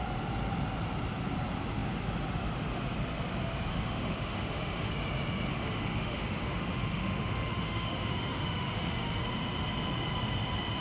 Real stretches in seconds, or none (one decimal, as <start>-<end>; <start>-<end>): 0.0-3.7; 4.9-5.5; 9.2-10.8